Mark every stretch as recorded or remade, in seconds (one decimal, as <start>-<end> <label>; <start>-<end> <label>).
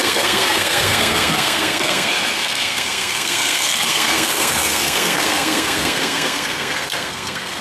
0.0-7.6 remade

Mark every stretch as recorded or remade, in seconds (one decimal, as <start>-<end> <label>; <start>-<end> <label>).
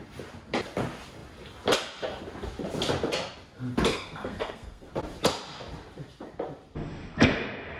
0.0-3.9 recorded; 3.9-4.9 remade; 4.9-7.8 recorded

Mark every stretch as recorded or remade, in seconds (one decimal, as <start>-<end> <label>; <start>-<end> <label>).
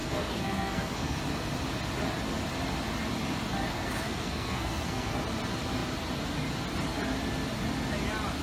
0.0-1.2 remade; 1.2-3.7 recorded; 3.7-5.1 remade; 5.1-8.4 recorded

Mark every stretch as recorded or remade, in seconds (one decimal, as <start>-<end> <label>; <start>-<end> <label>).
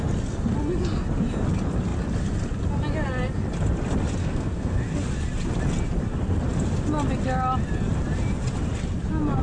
0.0-4.2 recorded; 4.2-4.8 remade; 4.8-9.4 recorded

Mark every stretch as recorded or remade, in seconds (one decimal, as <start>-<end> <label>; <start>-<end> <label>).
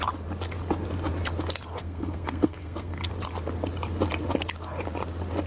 0.0-1.8 recorded; 1.8-3.1 remade; 3.1-5.5 recorded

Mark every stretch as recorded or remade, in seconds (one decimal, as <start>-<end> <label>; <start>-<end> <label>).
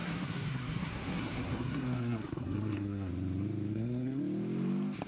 0.0-3.1 remade; 3.1-3.7 recorded; 3.7-4.2 remade; 4.2-5.1 recorded